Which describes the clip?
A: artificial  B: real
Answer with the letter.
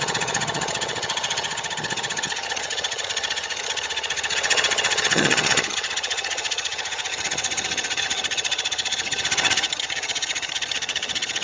A